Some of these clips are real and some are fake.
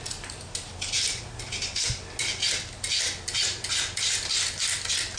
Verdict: real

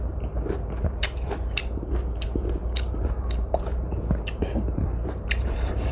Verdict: fake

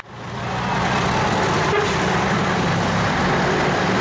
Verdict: fake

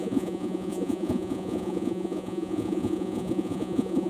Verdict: fake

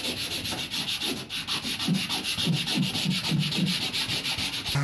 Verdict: real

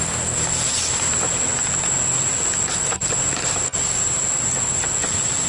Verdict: real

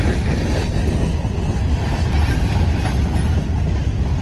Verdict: real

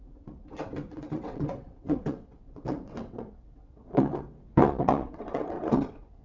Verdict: fake